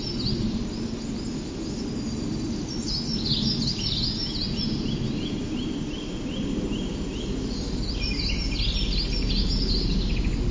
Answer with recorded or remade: recorded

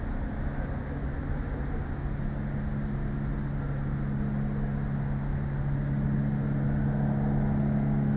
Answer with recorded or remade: recorded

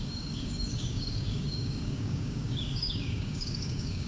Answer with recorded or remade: remade